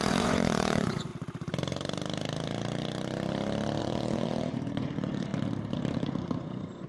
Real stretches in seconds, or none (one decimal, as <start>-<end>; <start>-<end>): 1.1-3.8; 5.3-5.9